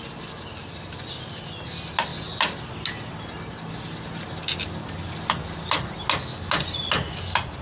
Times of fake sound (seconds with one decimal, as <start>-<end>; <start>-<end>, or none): none